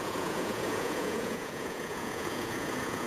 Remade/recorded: remade